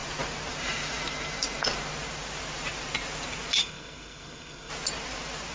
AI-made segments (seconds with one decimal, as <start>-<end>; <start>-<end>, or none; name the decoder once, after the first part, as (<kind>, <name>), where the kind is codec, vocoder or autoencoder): 3.6-4.7 (codec, SNAC)